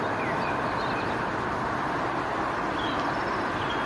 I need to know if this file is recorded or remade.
recorded